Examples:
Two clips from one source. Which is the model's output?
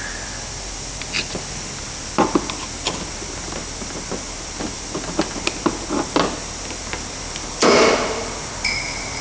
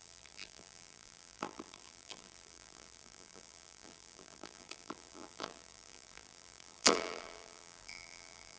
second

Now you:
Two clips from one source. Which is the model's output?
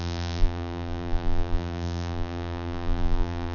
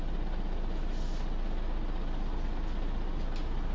first